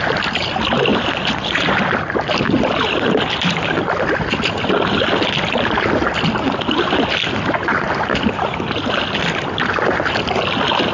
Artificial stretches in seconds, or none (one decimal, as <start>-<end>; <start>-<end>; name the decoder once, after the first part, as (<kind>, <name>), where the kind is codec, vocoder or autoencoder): none